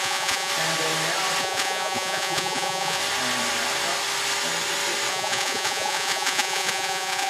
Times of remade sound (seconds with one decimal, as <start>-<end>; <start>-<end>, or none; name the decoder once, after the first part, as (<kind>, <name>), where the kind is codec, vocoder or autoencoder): 0.0-0.5 (vocoder, Vocos); 1.4-3.0; 5.1-7.3